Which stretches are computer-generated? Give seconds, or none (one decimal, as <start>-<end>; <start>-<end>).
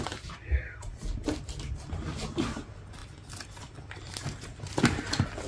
none